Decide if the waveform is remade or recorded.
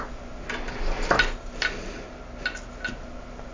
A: recorded